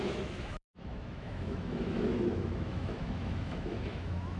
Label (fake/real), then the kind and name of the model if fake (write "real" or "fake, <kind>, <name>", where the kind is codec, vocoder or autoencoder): fake, autoencoder, DAC-VAE